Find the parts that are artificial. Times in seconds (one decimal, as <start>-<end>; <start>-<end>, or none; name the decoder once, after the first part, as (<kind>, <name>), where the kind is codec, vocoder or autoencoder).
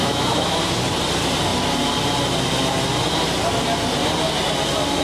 0.0-0.6 (autoencoder, DAC-VAE)